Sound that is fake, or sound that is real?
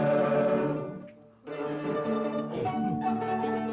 real